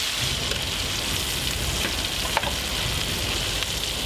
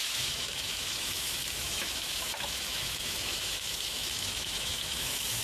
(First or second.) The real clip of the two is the first